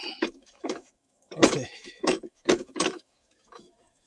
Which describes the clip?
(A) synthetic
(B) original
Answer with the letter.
A